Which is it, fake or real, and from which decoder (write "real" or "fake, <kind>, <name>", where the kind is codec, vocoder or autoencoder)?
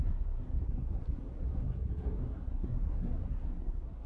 fake, codec, SNAC